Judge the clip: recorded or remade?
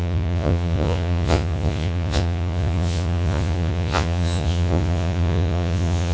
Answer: remade